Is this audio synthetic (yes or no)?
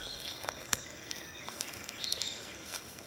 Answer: yes